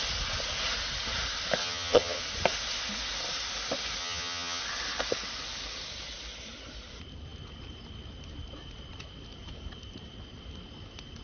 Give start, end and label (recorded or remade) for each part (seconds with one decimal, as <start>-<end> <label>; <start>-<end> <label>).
0.0-1.6 recorded; 1.6-2.2 remade; 2.2-4.0 recorded; 4.0-4.6 remade; 4.6-11.2 recorded

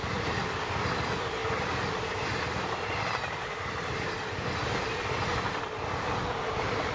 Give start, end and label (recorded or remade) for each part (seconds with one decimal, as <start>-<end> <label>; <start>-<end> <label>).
0.0-6.9 recorded

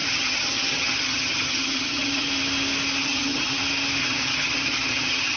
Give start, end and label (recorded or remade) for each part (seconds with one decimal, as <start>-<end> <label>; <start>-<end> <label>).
0.0-2.3 remade; 2.3-3.0 recorded; 3.0-3.6 remade; 3.6-4.0 recorded; 4.0-5.4 remade

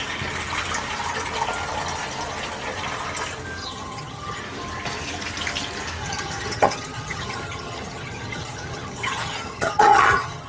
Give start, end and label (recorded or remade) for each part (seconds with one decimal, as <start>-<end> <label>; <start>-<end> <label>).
0.0-3.6 recorded; 3.6-4.4 remade; 4.4-6.0 recorded; 6.0-10.5 remade

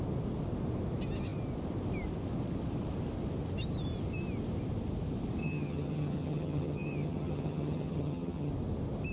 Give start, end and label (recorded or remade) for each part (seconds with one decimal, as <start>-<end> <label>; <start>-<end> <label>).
0.0-5.4 recorded; 5.4-8.5 remade; 8.5-9.1 recorded